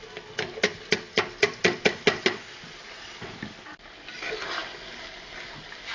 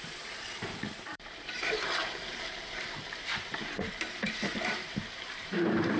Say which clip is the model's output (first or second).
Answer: second